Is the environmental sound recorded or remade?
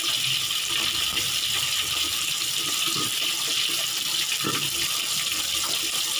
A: recorded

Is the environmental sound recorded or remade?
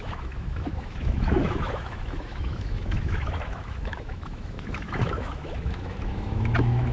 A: remade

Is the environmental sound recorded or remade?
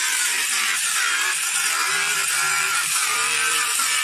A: remade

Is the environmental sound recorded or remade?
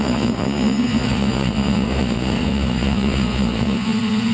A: remade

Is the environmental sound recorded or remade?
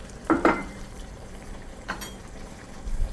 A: remade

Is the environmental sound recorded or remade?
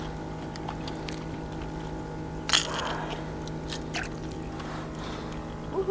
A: recorded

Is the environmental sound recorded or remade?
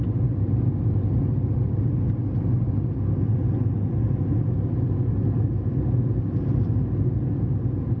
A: recorded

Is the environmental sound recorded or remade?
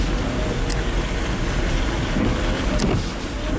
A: recorded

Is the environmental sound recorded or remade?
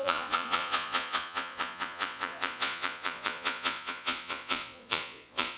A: remade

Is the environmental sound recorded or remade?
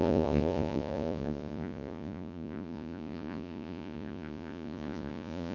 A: remade